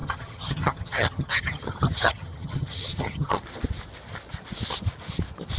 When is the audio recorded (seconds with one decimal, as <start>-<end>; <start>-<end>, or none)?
3.4-5.6